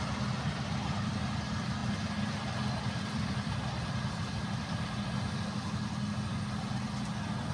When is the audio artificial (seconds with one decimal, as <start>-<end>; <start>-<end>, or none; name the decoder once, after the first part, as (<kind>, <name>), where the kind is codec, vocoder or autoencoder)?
none